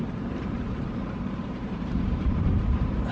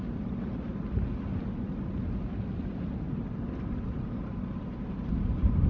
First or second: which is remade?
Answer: first